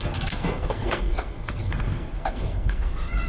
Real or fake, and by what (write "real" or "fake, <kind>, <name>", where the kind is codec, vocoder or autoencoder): fake, codec, SNAC